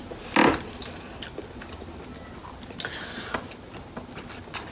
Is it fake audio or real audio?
real